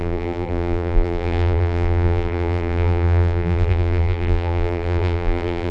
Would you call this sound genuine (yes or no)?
no